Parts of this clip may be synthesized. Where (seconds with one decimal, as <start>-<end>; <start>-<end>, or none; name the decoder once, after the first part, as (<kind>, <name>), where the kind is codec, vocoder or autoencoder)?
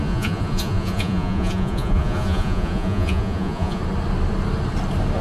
0.0-3.8 (vocoder, Vocos)